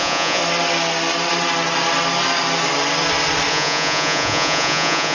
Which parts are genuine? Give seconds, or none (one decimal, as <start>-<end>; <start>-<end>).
0.4-3.5